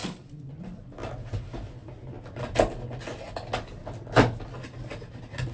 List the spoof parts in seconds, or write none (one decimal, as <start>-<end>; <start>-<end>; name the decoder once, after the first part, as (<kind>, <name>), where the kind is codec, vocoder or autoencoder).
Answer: none